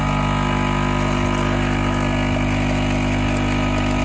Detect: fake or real real